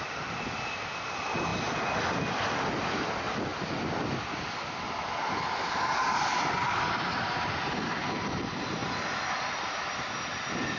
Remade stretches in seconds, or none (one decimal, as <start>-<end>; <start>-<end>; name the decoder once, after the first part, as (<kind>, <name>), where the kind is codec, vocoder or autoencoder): none